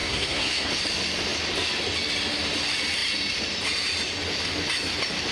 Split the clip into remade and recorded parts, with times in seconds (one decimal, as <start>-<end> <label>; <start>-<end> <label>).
0.0-0.7 remade; 0.7-5.3 recorded